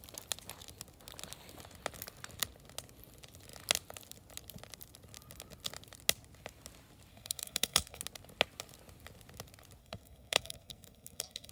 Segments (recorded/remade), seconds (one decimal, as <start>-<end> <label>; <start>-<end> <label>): 0.0-7.1 recorded; 7.1-8.0 remade; 8.0-9.8 recorded; 9.8-11.5 remade